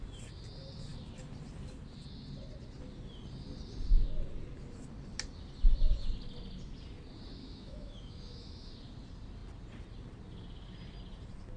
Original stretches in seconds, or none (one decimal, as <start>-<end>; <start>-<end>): 0.0-7.4; 8.7-11.6